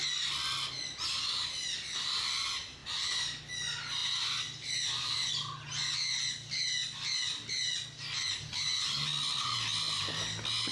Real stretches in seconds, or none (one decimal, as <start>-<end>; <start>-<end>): 0.0-10.7